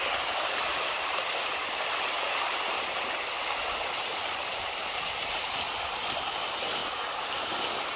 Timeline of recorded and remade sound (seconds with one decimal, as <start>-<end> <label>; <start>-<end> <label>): 0.0-0.7 recorded; 0.7-1.3 remade; 1.3-4.1 recorded; 4.1-5.6 remade; 5.6-6.8 recorded; 6.8-7.5 remade; 7.5-8.0 recorded